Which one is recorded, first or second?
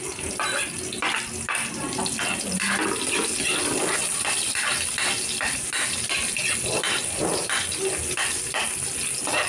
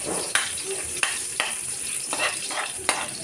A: first